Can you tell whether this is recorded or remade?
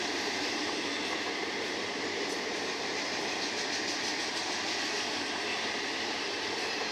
recorded